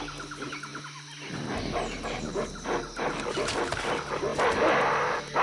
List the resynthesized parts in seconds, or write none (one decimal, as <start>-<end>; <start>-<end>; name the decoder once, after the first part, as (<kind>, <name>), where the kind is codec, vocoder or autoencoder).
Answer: none